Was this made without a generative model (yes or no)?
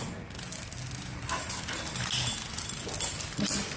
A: yes